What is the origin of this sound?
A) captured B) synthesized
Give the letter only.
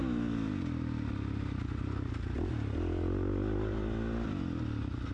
A